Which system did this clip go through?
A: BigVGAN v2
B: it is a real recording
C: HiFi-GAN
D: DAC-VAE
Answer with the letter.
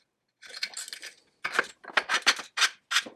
B